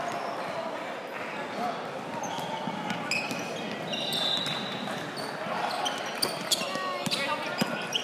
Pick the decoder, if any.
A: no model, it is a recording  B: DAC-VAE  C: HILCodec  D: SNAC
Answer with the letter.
A